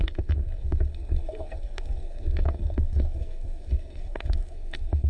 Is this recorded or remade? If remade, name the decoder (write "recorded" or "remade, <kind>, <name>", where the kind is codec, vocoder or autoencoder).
remade, codec, SNAC